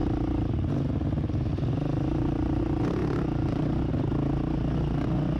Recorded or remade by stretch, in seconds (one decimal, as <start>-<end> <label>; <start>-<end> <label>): 0.0-0.7 remade; 0.7-1.5 recorded; 1.5-2.6 remade; 2.6-5.4 recorded